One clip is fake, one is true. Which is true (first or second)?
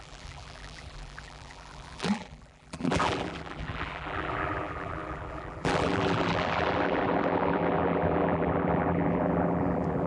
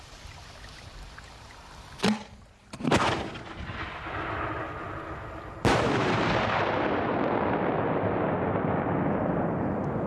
second